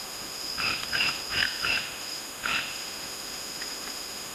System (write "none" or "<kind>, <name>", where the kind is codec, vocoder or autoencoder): autoencoder, DAC-VAE